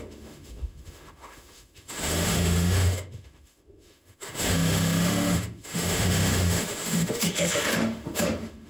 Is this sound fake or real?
fake